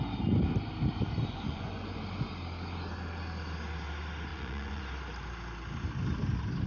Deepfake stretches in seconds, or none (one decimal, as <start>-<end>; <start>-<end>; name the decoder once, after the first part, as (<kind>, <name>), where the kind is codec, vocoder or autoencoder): 1.2-2.0 (vocoder, Vocos); 4.3-4.8